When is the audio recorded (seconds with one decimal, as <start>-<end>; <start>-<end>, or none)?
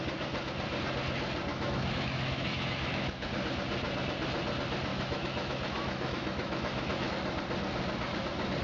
0.0-1.5; 3.3-4.9; 7.1-8.6